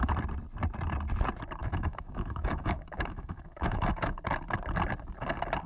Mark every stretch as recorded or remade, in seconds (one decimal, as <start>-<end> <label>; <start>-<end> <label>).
0.0-1.6 recorded; 1.6-4.2 remade; 4.2-5.7 recorded